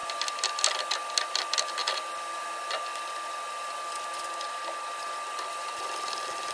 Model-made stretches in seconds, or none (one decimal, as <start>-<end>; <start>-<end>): none